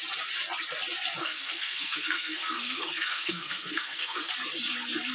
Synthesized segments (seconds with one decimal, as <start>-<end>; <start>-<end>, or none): 1.2-4.3